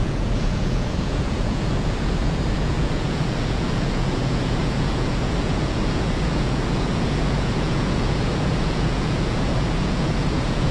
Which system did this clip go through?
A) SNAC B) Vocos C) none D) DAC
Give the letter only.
B